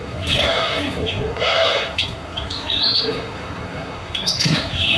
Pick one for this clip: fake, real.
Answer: fake